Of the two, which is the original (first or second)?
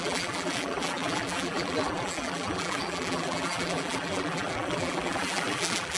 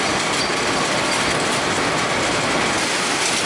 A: second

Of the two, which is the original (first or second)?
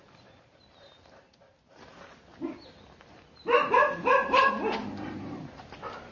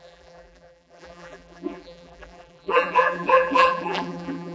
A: first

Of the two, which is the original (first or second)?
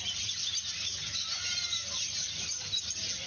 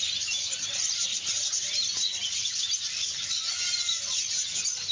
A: first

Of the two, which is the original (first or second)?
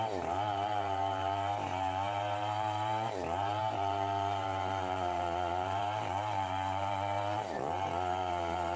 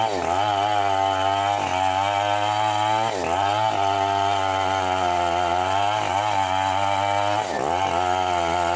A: second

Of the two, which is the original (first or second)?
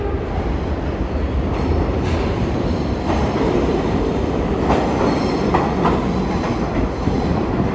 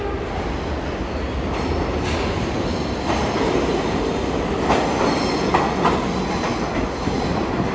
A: second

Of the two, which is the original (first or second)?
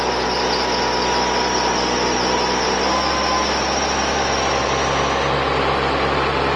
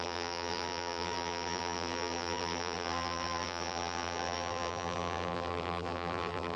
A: first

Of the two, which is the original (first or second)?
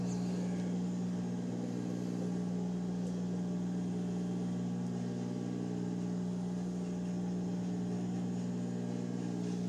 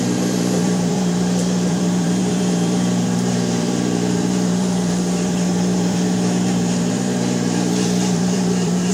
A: first